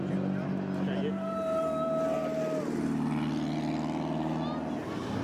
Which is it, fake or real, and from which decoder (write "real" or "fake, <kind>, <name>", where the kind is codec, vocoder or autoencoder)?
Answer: real